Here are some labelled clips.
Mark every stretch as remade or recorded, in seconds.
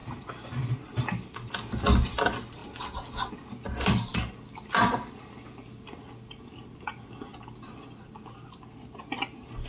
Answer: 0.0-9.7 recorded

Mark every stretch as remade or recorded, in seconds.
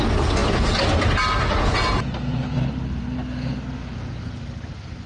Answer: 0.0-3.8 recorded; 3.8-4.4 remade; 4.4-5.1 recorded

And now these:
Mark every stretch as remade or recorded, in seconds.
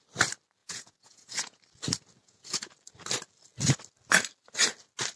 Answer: 0.0-0.6 recorded; 0.6-1.6 remade; 1.6-2.2 recorded; 2.2-2.7 remade; 2.7-5.2 recorded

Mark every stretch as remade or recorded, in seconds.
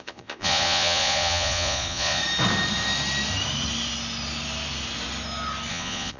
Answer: 0.0-2.2 remade; 2.2-5.7 recorded; 5.7-6.2 remade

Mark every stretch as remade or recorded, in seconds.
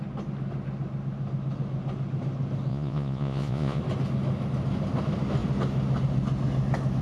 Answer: 0.0-2.7 recorded; 2.7-3.8 remade; 3.8-7.0 recorded